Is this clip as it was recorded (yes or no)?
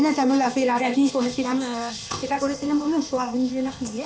no